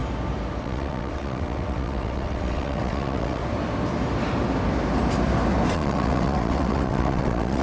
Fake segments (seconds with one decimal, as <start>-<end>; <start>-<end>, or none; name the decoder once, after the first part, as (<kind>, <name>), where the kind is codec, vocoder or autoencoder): 0.6-3.4 (vocoder, WaveNeXt); 5.7-7.6